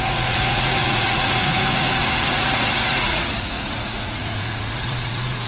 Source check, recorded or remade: remade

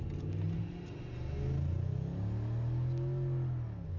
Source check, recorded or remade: recorded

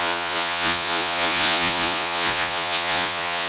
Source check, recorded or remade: remade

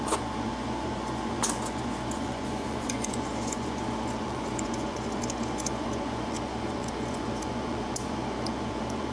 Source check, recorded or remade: remade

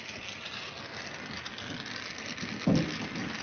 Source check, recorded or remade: recorded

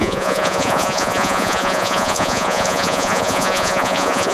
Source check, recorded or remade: remade